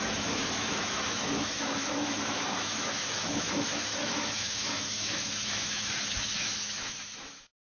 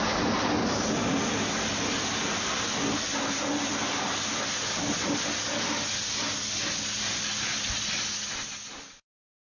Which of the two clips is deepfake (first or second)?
first